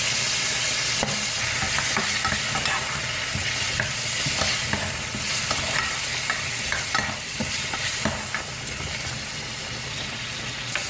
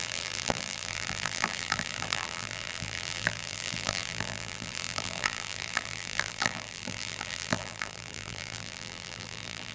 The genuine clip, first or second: first